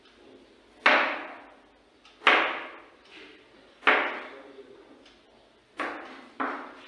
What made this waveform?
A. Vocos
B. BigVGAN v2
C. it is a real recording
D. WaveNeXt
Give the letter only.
C